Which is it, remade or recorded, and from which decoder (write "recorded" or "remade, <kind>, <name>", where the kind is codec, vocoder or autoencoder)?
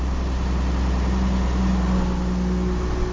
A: recorded